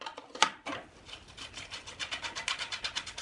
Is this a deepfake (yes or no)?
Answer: no